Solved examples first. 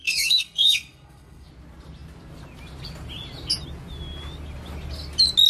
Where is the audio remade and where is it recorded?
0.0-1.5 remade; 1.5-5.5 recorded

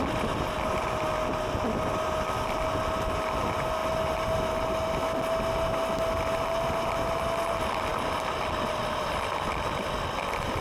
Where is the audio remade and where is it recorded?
0.0-10.6 recorded

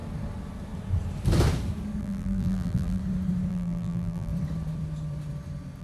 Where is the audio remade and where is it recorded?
0.0-2.0 recorded; 2.0-3.0 remade; 3.0-3.5 recorded; 3.5-4.3 remade; 4.3-5.8 recorded